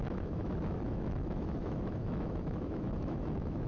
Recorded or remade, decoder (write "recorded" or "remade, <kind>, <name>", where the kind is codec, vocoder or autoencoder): remade, autoencoder, DAC-VAE